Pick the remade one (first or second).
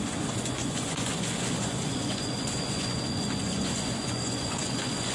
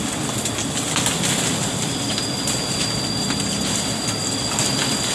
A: first